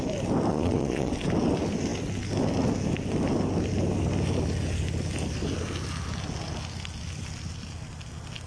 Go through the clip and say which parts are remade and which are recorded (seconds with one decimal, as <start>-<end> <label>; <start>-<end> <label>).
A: 0.0-0.5 recorded; 0.5-1.1 remade; 1.1-8.5 recorded